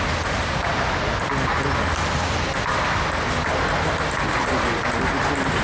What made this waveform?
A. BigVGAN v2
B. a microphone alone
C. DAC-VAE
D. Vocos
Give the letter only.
B